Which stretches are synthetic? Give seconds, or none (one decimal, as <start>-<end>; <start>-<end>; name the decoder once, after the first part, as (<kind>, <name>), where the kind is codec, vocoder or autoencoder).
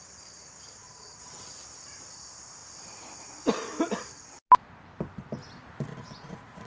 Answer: 0.8-1.5 (vocoder, Vocos); 5.9-6.7